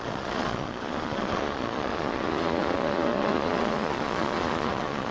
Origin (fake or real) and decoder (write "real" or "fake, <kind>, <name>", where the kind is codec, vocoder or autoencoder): fake, vocoder, Vocos